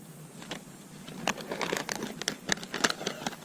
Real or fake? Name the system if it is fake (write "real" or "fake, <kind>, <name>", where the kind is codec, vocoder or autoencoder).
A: real